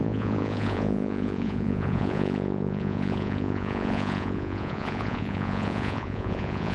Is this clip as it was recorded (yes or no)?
no